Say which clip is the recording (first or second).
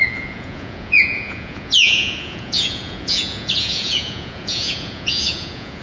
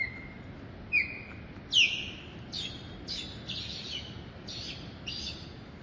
second